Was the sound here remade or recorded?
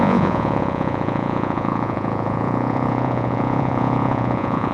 remade